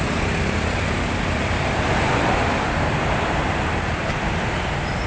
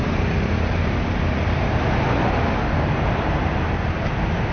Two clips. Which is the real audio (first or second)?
second